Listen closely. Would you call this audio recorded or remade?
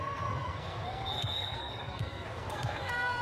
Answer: remade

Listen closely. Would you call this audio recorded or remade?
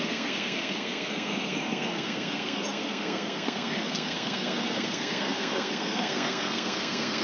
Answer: remade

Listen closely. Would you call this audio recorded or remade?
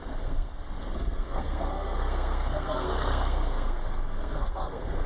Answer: remade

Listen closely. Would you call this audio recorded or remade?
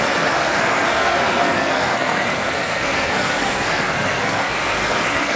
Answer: remade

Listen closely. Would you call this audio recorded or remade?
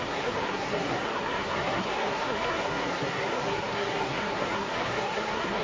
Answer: remade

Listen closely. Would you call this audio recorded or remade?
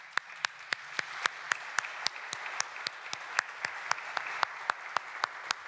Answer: recorded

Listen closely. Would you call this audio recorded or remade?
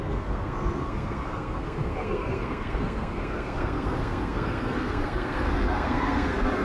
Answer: remade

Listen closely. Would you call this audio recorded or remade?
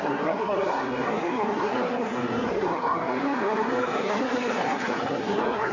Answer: remade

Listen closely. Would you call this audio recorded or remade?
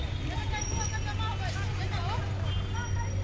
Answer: recorded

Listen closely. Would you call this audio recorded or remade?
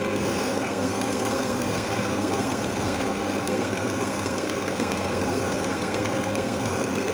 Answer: remade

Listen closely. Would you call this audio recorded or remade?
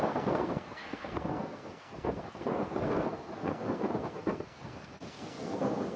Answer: remade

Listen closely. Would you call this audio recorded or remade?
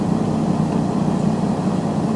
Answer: recorded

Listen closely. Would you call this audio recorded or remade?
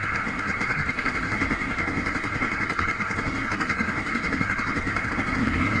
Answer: remade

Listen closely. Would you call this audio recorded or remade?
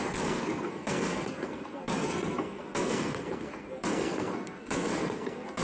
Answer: remade